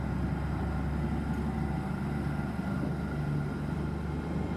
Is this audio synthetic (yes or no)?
no